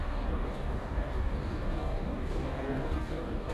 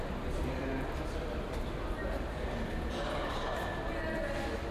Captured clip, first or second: second